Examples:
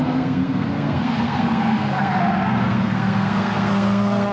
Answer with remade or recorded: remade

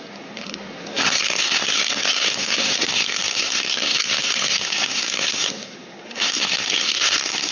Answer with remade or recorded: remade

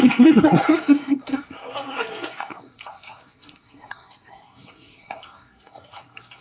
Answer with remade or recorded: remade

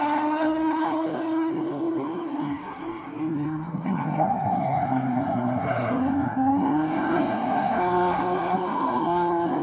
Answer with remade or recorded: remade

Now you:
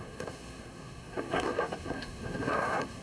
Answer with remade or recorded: remade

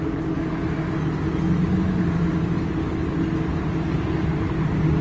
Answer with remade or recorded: recorded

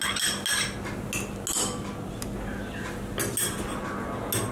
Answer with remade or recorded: recorded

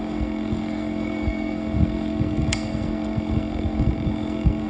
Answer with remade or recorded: remade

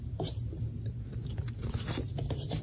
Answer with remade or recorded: recorded